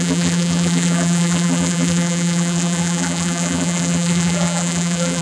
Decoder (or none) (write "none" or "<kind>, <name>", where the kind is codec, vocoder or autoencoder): vocoder, BigVGAN v2